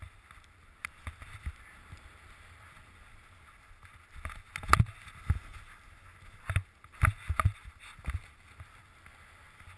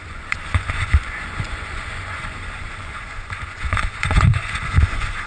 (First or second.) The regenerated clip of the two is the second